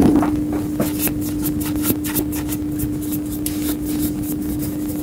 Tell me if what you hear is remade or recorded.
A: recorded